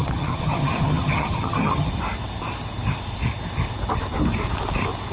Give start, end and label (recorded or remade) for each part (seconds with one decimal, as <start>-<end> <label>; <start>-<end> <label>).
0.0-1.9 remade; 1.9-5.1 recorded